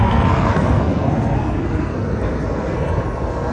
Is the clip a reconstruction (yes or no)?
yes